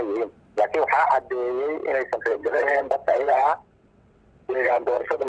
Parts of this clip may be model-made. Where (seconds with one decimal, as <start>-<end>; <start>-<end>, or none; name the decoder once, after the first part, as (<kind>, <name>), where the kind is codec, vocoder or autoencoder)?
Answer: 2.3-5.3 (vocoder, WaveNeXt)